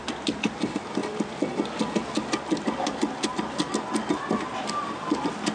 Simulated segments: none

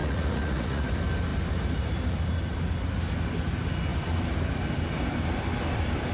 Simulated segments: 0.0-0.9 (vocoder, Vocos)

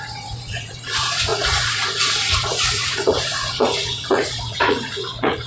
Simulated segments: 0.0-5.5 (vocoder, Vocos)

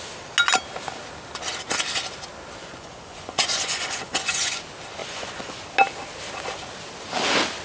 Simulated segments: 2.6-4.6 (vocoder, Vocos); 5.0-5.6

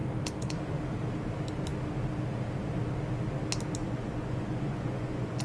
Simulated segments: 3.8-5.4 (vocoder, Vocos)

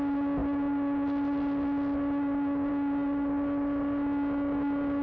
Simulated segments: none

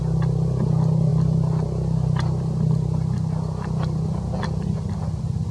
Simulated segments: none